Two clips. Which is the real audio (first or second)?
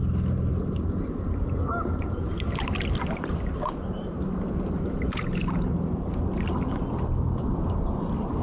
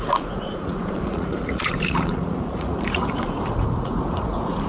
first